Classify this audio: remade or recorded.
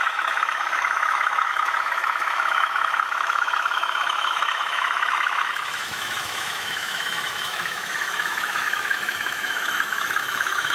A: remade